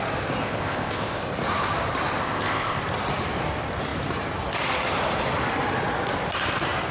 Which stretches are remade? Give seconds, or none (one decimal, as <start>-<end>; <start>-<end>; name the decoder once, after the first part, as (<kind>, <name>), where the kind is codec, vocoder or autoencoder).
0.4-1.2 (codec, ZipCodec); 2.2-2.8